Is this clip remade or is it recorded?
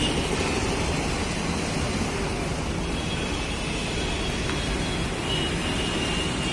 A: recorded